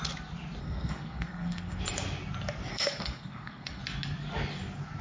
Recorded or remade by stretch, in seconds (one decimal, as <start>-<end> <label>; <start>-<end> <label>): 0.0-0.6 recorded; 0.6-1.8 remade; 1.8-2.7 recorded; 2.7-3.8 remade; 3.8-5.0 recorded